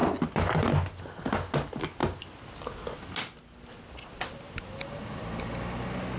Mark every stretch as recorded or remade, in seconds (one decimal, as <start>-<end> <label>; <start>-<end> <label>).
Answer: 0.0-1.0 remade; 1.0-6.2 recorded